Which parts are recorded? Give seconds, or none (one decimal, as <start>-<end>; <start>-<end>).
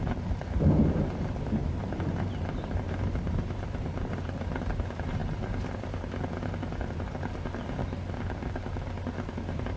7.8-9.3